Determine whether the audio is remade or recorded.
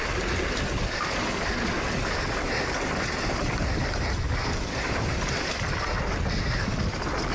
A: recorded